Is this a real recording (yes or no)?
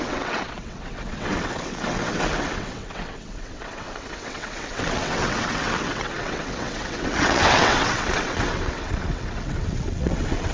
no